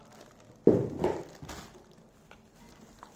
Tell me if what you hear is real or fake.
real